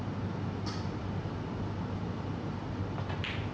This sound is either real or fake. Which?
real